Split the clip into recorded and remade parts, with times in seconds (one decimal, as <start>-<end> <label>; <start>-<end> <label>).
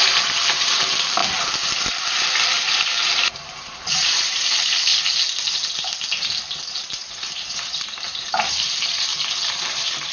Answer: 0.0-1.2 remade; 1.2-3.3 recorded; 3.3-4.9 remade; 4.9-6.8 recorded; 6.8-9.1 remade; 9.1-9.7 recorded; 9.7-10.1 remade